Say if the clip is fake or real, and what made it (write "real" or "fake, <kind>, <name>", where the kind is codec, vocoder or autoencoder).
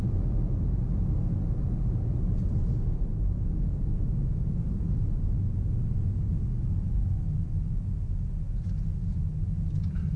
real